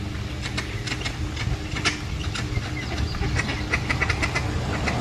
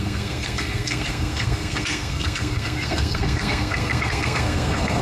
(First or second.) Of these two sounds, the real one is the first